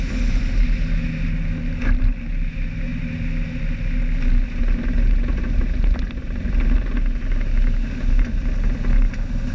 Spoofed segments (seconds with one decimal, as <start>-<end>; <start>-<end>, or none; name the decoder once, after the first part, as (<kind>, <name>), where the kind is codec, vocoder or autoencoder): none